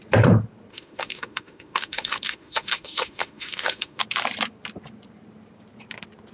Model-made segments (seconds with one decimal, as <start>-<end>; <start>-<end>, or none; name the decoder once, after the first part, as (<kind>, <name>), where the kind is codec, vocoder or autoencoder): 0.7-4.0 (autoencoder, DAC-VAE)